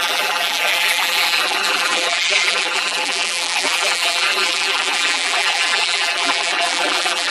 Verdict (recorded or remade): remade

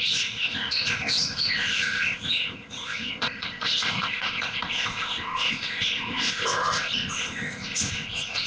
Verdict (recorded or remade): remade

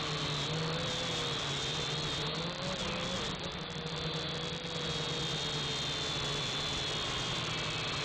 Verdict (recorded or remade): recorded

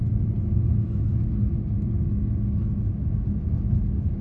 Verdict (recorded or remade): recorded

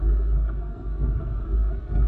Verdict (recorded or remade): remade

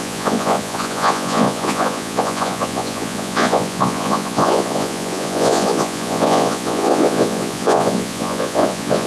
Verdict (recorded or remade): remade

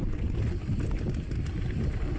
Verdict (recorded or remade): recorded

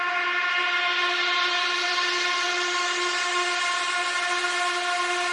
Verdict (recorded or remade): recorded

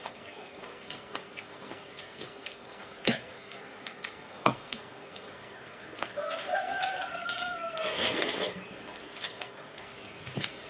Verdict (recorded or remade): remade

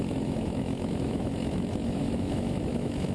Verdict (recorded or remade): remade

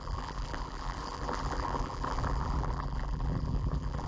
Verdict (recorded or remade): remade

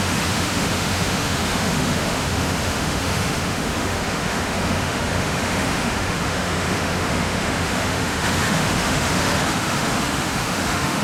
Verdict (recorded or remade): remade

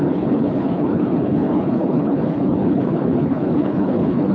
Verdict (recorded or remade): remade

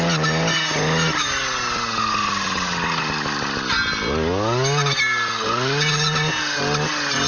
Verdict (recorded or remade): recorded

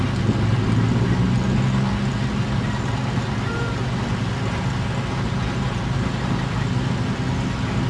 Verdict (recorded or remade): recorded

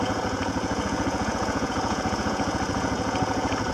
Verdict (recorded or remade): remade